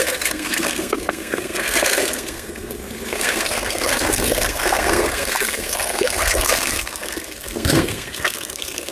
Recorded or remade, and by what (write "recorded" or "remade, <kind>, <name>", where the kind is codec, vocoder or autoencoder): remade, codec, SNAC